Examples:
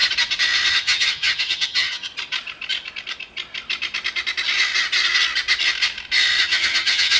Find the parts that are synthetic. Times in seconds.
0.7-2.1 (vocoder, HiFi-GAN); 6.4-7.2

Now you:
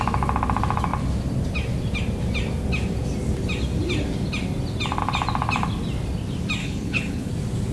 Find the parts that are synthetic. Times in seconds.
6.6-7.3 (codec, HILCodec)

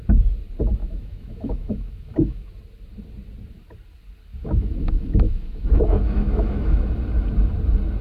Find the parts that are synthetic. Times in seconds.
0.8-2.5 (autoencoder, DAC-VAE); 4.3-6.8